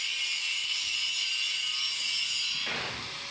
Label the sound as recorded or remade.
recorded